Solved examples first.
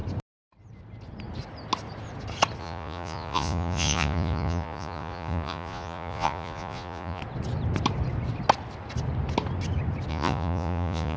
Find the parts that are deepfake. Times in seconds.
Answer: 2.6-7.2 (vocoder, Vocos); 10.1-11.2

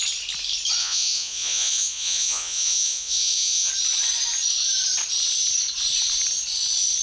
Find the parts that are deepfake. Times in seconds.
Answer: 0.8-3.7 (vocoder, Vocos)

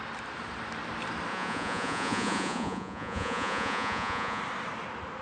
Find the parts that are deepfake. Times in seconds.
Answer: 1.3-4.4 (vocoder, Vocos)

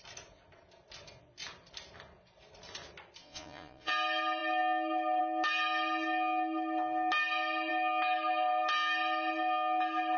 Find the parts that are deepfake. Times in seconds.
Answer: 3.2-3.9 (vocoder, Vocos)

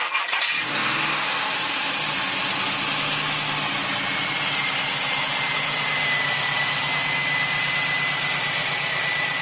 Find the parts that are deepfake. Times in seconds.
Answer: none

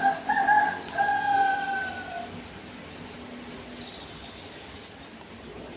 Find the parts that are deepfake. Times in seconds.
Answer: none